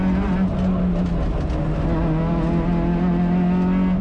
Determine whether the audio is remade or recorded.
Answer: recorded